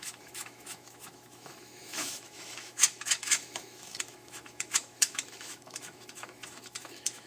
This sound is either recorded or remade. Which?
remade